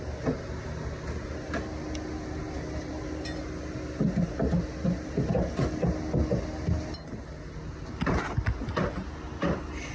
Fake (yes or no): no